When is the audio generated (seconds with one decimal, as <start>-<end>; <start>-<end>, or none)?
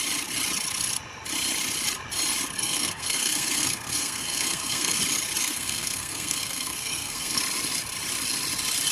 2.6-5.0; 5.4-7.4